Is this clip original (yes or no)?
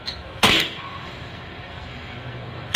no